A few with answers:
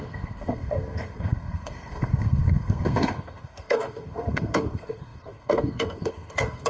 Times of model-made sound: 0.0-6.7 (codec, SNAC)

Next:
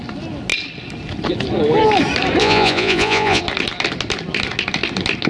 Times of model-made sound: 2.4-3.4 (vocoder, Vocos)

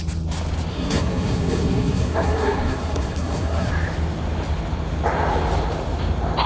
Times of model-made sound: 0.7-3.7 (codec, SNAC)